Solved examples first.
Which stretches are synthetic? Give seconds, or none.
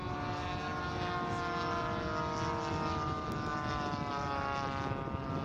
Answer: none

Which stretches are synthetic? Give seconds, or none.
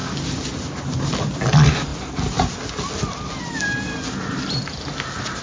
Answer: none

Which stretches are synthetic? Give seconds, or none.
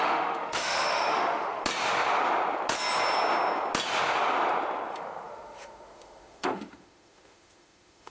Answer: 0.0-1.6 (autoencoder, DAC-VAE); 4.9-8.1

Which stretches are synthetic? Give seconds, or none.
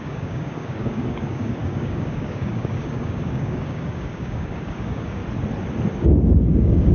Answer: 0.0-5.2 (codec, DAC); 5.9-6.9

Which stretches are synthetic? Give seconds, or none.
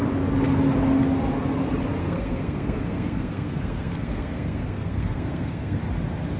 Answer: 2.0-5.8 (codec, SNAC)